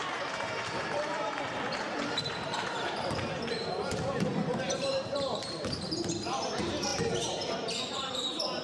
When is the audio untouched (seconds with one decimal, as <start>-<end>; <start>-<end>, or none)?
none